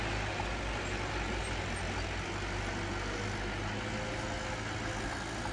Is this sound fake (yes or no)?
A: no